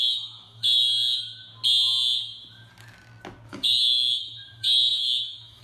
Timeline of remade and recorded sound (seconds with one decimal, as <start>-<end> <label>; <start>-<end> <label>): 0.0-0.8 remade; 0.8-3.5 recorded; 3.5-5.6 remade